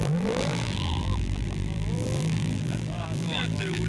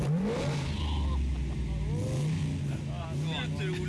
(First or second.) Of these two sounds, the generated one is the first